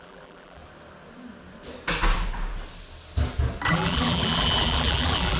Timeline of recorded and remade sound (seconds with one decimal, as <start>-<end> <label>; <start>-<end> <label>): 0.0-0.6 remade; 0.6-3.7 recorded; 3.7-5.4 remade